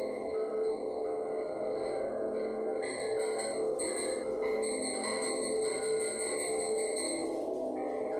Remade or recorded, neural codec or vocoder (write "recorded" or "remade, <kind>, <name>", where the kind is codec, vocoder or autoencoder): recorded